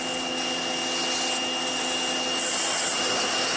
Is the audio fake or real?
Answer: real